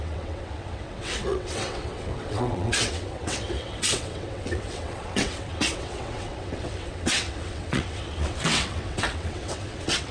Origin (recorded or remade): remade